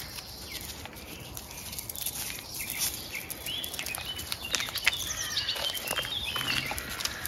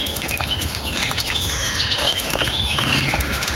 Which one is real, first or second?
first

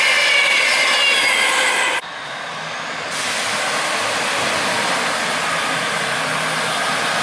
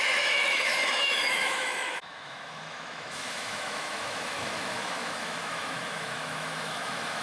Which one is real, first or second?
first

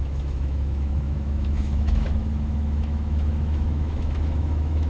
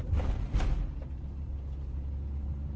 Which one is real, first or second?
second